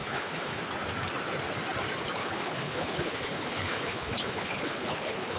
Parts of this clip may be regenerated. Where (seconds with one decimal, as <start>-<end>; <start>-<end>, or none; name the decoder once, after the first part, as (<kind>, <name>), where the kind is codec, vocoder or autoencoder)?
0.0-0.6 (codec, HILCodec); 2.2-5.4